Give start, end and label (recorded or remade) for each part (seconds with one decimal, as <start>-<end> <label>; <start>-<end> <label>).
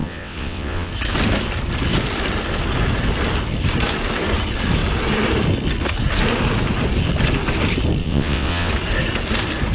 0.0-0.9 remade; 0.9-8.0 recorded; 8.0-8.7 remade; 8.7-9.7 recorded